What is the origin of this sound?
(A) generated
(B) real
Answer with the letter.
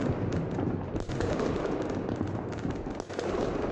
B